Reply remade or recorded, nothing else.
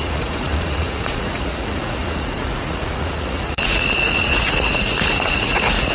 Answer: remade